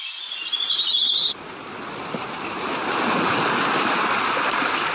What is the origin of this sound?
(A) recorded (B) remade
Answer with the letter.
A